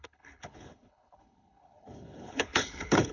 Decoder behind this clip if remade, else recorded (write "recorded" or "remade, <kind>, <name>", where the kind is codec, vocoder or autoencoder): remade, codec, HILCodec